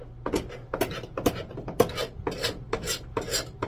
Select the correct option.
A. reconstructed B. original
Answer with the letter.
B